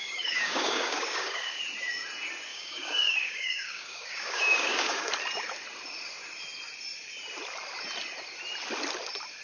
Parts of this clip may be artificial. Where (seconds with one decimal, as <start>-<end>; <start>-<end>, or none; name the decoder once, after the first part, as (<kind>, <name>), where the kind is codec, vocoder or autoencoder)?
0.0-1.6 (codec, DAC); 2.5-5.1